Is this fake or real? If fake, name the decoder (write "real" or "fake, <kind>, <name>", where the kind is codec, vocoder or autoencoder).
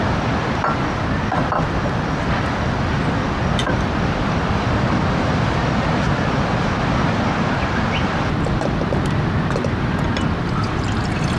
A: fake, vocoder, BigVGAN v2